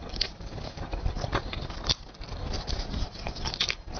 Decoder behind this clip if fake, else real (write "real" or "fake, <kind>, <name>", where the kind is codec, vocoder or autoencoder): real